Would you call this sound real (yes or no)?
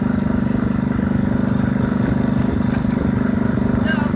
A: yes